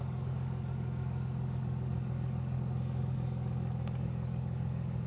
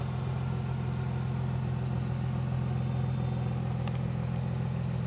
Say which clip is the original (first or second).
second